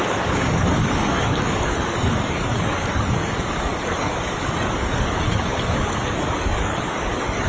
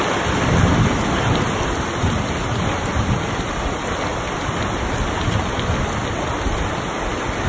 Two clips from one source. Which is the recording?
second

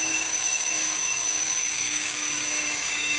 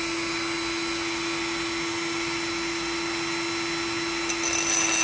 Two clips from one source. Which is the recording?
second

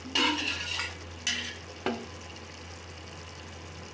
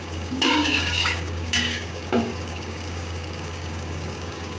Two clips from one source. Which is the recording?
first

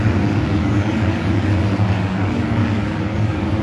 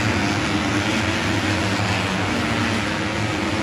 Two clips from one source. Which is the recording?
second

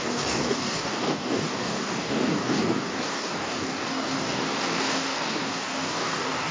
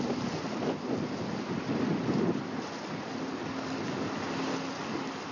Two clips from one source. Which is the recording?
second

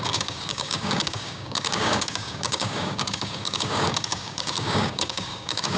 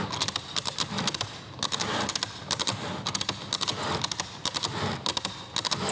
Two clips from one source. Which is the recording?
second